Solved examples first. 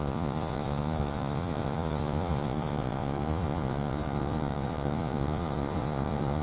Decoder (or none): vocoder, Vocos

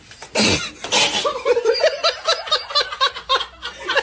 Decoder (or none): none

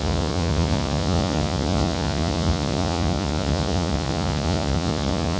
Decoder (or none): vocoder, Vocos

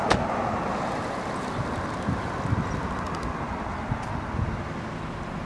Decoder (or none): none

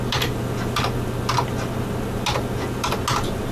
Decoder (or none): none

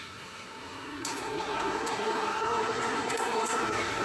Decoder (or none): codec, SNAC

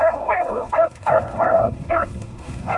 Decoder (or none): codec, SNAC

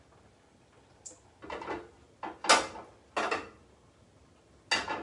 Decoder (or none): none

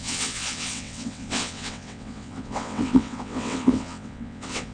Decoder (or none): vocoder, WaveNeXt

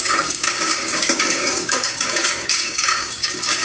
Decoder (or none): codec, DAC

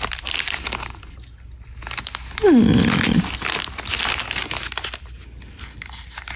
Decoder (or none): none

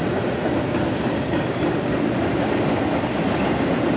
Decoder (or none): none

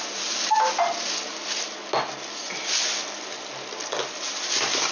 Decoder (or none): none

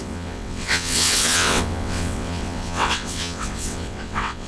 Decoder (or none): vocoder, WaveNeXt